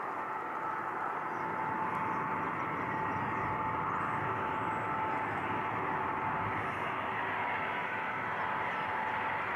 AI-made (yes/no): no